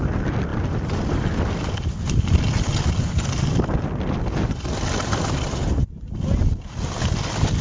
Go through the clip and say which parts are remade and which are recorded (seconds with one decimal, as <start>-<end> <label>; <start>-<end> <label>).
0.0-7.6 recorded